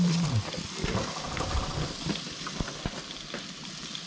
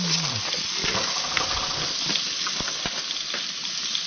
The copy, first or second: first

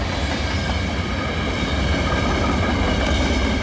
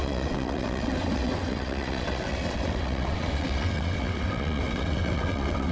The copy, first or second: second